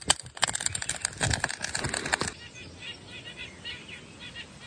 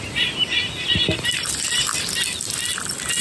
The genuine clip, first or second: first